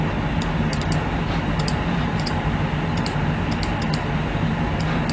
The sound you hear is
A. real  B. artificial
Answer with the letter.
A